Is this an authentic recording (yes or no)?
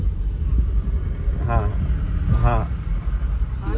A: yes